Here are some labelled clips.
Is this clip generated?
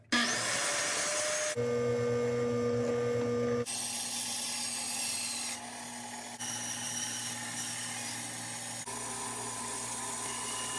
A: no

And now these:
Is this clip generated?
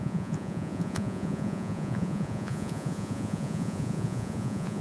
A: yes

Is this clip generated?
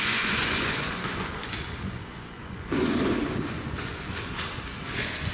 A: yes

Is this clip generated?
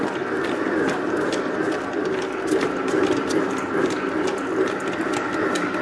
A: no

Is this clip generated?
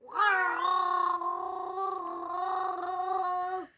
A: no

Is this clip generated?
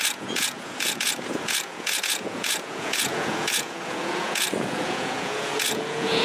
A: yes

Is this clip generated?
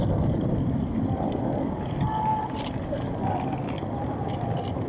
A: no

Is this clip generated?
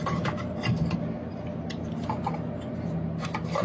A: no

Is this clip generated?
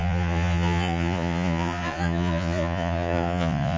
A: yes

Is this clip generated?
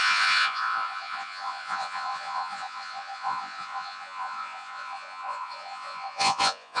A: yes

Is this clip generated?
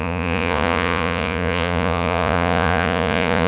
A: yes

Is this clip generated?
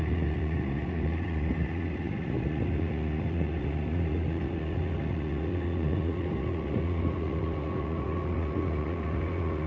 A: yes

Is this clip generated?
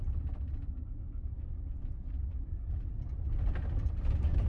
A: no